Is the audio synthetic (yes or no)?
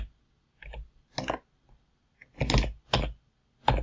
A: no